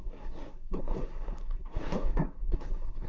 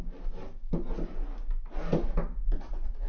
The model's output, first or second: first